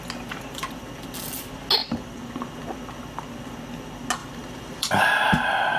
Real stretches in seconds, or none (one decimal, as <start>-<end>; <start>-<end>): 0.0-1.8; 2.3-4.2; 5.1-5.8